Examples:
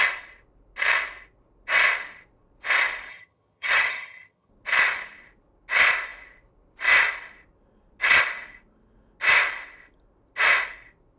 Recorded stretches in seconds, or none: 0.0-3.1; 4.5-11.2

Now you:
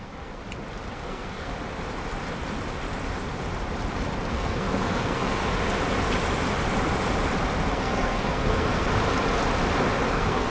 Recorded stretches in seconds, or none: 0.4-0.9; 1.5-4.3; 5.4-7.7; 8.9-10.1

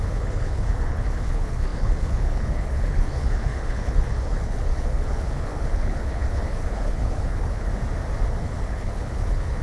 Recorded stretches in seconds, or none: 7.7-8.3

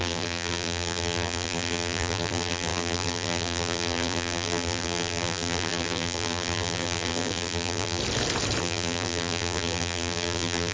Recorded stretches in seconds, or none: 8.0-8.6

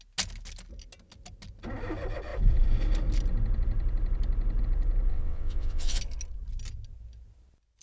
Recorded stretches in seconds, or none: 0.0-5.1; 6.0-7.8

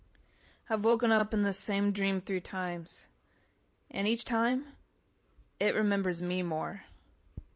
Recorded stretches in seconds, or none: 1.2-4.2; 4.8-6.2

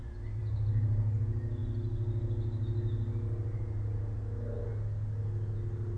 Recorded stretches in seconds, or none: 0.0-6.0

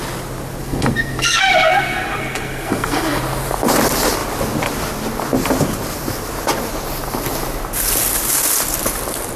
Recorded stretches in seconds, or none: 0.0-0.6; 3.2-9.4